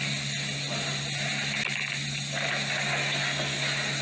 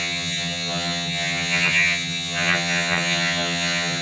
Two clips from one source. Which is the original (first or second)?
first